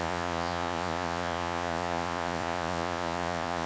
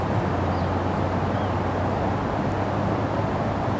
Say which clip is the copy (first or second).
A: first